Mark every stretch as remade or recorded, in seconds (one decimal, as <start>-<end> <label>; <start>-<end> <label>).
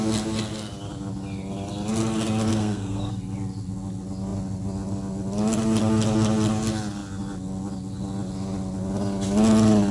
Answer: 0.0-2.5 recorded; 2.5-3.1 remade; 3.1-9.9 recorded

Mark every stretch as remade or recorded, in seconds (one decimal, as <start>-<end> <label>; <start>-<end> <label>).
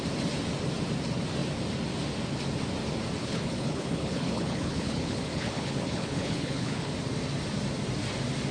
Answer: 0.0-3.2 recorded; 3.2-6.9 remade; 6.9-8.5 recorded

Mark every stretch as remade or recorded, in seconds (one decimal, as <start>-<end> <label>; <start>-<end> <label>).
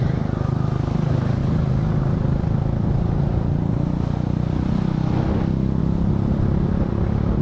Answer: 0.0-5.8 recorded; 5.8-6.9 remade; 6.9-7.4 recorded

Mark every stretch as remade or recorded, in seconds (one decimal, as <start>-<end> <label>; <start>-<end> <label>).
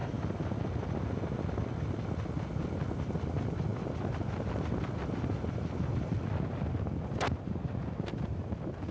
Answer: 0.0-8.9 recorded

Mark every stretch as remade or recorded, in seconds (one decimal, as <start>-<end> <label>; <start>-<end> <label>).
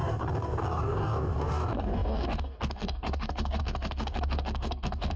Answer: 0.0-5.2 remade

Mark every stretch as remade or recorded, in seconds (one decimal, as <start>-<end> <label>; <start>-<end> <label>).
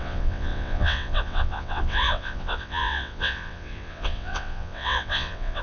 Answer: 0.0-5.6 remade